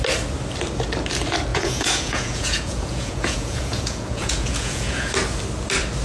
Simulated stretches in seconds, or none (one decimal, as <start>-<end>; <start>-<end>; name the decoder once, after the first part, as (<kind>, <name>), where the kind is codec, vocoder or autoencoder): 1.5-5.1 (vocoder, Vocos)

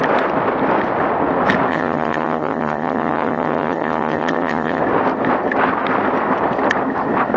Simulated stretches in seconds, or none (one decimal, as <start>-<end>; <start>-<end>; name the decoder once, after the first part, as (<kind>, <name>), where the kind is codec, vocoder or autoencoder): 1.7-4.8 (vocoder, HiFi-GAN)

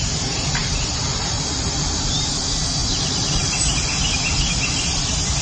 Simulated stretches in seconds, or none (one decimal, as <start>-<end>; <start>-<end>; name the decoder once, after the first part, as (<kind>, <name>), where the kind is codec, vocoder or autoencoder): 0.6-2.3 (vocoder, BigVGAN v2); 2.8-3.9

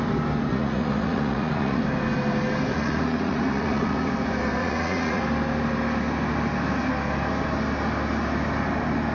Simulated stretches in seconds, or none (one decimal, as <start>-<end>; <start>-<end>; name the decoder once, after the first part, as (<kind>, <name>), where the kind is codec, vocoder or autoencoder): 0.5-1.8 (vocoder, Vocos); 2.7-4.1; 4.6-5.2

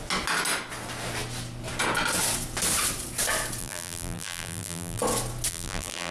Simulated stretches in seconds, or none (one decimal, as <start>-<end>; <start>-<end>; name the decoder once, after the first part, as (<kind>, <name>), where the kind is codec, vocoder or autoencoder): 3.6-5.0 (vocoder, BigVGAN v2); 5.5-6.1

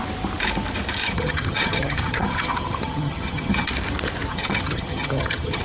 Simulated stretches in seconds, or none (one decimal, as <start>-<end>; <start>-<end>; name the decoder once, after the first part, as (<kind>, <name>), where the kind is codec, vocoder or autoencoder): 1.0-3.7 (vocoder, HiFi-GAN); 4.3-5.6

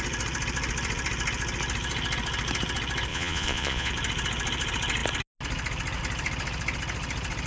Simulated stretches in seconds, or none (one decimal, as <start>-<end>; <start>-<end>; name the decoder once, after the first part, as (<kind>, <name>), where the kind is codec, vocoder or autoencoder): 3.1-3.9 (vocoder, Vocos)